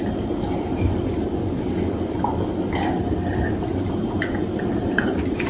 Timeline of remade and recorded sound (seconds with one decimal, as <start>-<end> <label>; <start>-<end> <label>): 0.0-3.7 recorded; 3.7-5.5 remade